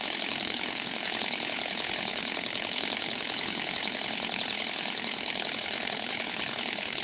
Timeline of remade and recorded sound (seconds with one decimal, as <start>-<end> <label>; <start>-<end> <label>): 0.0-7.0 remade